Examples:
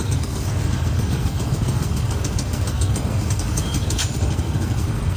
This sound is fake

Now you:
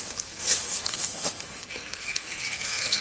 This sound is fake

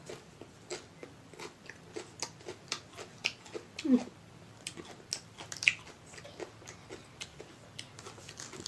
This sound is real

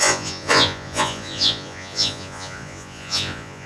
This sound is fake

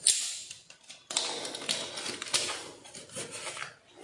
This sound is real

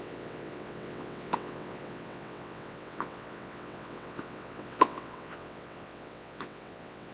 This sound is fake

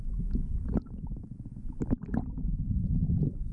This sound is fake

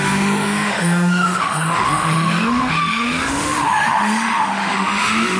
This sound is fake